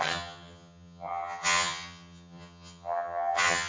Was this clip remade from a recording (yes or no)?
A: yes